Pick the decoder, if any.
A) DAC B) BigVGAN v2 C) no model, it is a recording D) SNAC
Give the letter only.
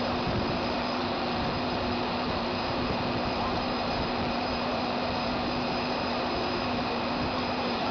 B